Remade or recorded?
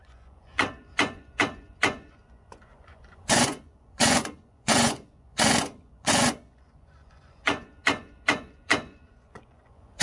remade